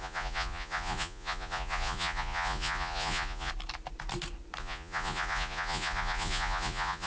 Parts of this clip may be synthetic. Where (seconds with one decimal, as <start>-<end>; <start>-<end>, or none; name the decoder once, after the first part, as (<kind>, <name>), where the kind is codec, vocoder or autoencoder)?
0.0-3.5 (vocoder, Vocos); 4.6-7.1